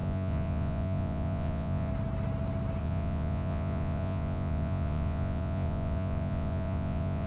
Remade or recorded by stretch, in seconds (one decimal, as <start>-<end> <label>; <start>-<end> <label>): 0.0-1.9 remade; 1.9-2.8 recorded; 2.8-7.3 remade